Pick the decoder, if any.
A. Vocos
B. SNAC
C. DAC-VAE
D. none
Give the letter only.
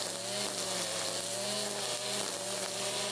D